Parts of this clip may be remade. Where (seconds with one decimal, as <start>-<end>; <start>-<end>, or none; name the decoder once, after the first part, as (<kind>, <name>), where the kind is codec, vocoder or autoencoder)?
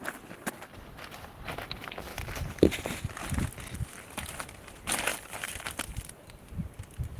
2.1-2.8 (vocoder, BigVGAN v2); 5.1-6.4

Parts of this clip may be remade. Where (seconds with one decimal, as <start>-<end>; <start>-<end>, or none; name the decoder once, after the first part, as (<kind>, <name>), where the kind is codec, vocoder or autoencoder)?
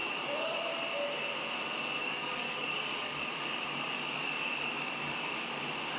0.0-0.7 (codec, DAC); 2.0-5.6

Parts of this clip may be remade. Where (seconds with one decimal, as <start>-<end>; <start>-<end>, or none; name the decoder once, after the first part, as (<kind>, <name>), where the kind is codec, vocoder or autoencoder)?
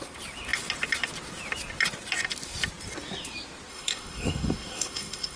3.7-5.4 (autoencoder, DAC-VAE)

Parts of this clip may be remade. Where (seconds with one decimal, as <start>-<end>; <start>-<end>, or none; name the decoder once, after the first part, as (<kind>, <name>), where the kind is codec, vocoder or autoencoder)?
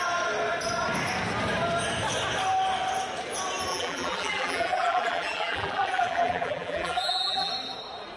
3.7-7.5 (vocoder, BigVGAN v2)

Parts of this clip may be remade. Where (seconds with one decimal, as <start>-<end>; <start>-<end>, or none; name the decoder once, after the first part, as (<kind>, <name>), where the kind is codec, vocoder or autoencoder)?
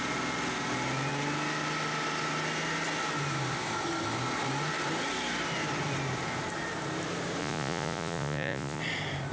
7.4-8.8 (vocoder, Vocos)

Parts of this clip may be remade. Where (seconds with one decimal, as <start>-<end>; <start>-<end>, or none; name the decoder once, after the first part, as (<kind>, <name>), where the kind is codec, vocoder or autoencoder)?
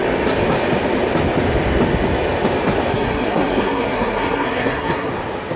2.9-5.1 (codec, SNAC)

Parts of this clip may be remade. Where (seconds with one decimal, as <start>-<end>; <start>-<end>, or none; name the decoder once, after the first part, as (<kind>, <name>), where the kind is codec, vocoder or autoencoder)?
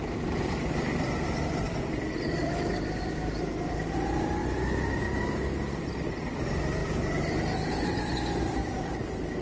0.0-2.4 (vocoder, BigVGAN v2); 3.7-4.4; 5.2-9.4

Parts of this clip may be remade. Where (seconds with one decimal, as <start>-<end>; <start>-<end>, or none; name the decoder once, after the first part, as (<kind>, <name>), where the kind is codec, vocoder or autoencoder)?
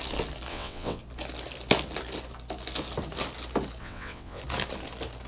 0.5-1.0 (vocoder, WaveNeXt); 3.8-4.4